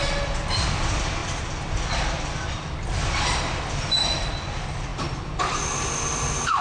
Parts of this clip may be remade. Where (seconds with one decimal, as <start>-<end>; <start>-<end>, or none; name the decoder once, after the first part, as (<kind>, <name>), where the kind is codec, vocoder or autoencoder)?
none